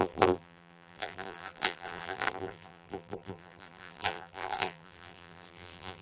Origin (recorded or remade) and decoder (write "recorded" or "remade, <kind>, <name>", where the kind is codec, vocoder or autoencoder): remade, vocoder, BigVGAN v2